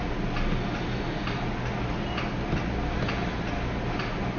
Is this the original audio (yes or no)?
yes